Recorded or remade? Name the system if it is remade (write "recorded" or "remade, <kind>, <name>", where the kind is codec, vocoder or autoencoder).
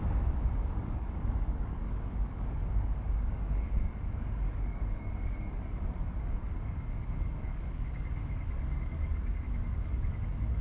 remade, codec, DAC